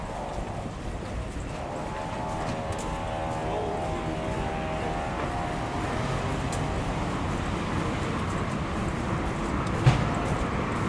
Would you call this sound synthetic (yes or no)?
no